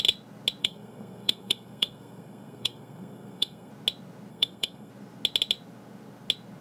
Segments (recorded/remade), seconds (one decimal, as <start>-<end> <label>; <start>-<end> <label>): 0.0-0.6 recorded; 0.6-3.7 remade; 3.7-4.3 recorded; 4.3-4.9 remade; 4.9-6.6 recorded